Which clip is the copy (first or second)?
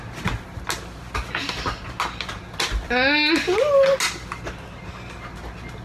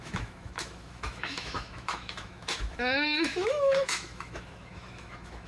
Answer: second